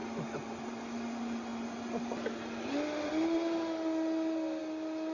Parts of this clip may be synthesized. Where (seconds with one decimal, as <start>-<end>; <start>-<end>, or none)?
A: none